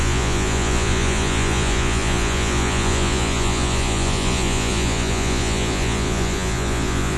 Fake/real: fake